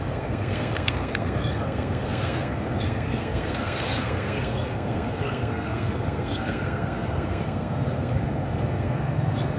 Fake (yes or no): yes